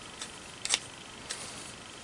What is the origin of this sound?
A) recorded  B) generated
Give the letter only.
A